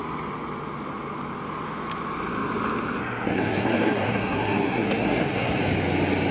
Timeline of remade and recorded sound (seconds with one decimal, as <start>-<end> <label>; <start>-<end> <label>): 0.0-3.0 recorded; 3.0-5.6 remade; 5.6-6.3 recorded